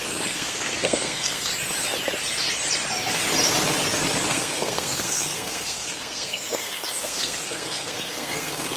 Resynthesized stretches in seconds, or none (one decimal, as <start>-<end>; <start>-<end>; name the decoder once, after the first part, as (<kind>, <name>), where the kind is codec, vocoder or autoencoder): 0.0-1.5 (codec, SNAC); 4.3-8.8